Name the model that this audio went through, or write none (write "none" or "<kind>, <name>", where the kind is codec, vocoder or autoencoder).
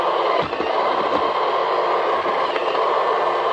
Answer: none